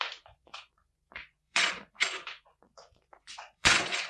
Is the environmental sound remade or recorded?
remade